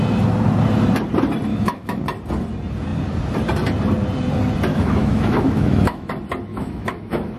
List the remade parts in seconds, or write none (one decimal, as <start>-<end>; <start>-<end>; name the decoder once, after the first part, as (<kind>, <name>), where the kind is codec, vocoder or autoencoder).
1.5-2.0 (autoencoder, DAC-VAE); 4.7-6.1; 6.5-7.4